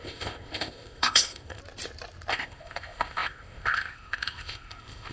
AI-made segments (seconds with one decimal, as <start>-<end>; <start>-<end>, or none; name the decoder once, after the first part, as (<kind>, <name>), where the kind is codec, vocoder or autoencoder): 0.0-1.6 (codec, ZipCodec); 2.3-5.1